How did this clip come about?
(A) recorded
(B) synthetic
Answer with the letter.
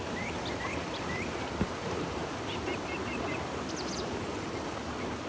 B